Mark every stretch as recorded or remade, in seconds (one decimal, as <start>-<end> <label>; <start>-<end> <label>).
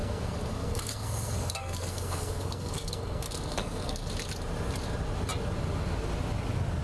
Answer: 0.0-4.1 remade; 4.1-6.8 recorded